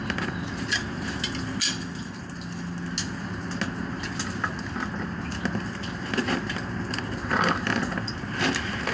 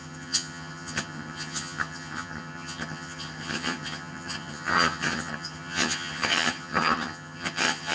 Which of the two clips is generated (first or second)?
second